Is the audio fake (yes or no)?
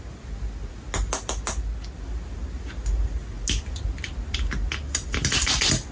no